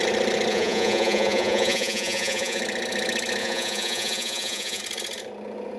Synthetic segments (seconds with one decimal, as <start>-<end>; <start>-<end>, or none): 0.5-2.6; 3.4-4.8